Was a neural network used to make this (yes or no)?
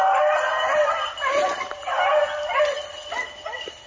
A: no